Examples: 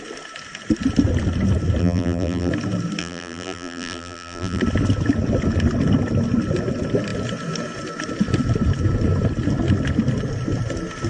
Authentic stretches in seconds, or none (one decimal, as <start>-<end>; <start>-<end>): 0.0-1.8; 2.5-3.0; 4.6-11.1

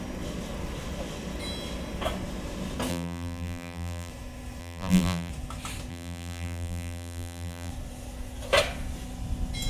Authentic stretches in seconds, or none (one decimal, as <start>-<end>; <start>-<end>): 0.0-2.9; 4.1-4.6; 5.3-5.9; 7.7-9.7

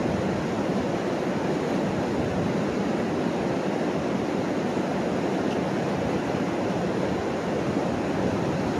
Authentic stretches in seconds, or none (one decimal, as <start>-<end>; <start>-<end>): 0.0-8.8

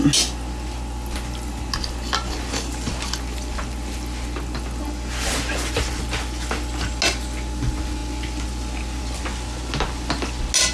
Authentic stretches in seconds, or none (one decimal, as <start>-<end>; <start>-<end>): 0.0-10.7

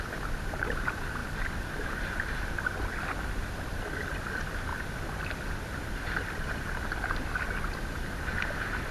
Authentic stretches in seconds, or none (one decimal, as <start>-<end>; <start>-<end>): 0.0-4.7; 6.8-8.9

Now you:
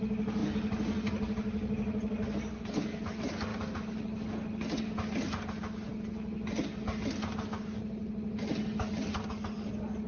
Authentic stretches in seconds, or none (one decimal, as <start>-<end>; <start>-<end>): 0.0-10.1

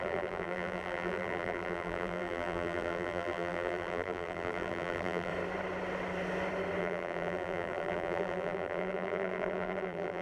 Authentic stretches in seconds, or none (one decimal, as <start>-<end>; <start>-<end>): 5.3-6.8